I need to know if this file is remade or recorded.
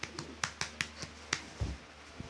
recorded